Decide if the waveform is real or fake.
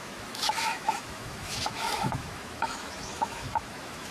fake